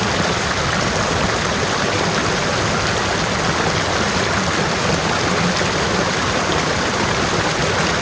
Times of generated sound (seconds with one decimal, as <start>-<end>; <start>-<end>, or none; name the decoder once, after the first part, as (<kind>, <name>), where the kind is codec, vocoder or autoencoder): none